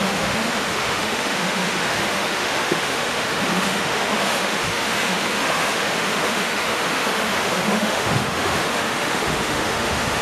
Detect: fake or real fake